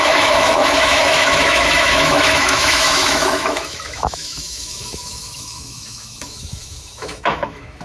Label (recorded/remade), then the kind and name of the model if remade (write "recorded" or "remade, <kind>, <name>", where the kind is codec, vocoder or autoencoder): remade, autoencoder, DAC-VAE